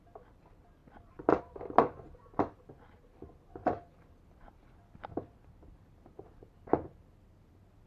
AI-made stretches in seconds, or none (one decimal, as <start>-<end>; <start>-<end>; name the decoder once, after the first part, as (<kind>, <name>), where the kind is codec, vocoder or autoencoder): none